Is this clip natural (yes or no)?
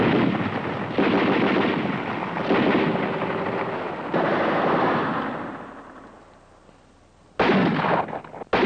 yes